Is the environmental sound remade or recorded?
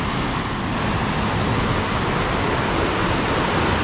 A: recorded